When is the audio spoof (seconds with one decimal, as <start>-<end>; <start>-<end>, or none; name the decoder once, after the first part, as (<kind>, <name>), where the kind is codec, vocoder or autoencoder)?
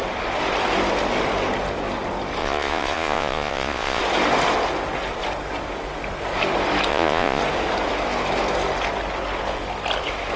2.4-4.0 (vocoder, Vocos); 6.9-7.4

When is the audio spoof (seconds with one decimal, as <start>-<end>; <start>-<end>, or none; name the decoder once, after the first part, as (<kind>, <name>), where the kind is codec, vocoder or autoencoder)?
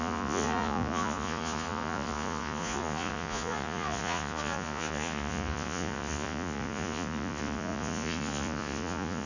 0.0-9.3 (vocoder, Vocos)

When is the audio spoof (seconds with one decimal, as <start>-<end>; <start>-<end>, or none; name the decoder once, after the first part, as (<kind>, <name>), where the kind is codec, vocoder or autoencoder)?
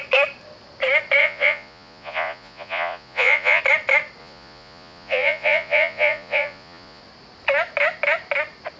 1.2-3.6 (vocoder, Vocos); 4.2-7.0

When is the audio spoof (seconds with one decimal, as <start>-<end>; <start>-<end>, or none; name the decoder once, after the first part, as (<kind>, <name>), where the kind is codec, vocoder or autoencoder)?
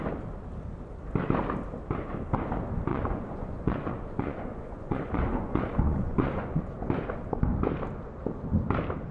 2.9-6.6 (vocoder, Vocos)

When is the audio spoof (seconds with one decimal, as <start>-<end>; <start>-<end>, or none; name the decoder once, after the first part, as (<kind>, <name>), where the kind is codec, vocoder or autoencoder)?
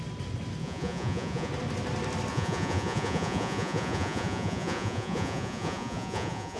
0.6-1.5 (vocoder, Vocos); 2.3-6.6